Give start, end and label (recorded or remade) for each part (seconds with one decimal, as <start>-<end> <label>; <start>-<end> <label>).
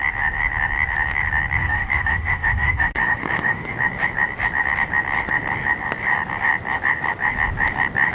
0.0-1.6 recorded; 1.6-3.7 remade; 3.7-8.1 recorded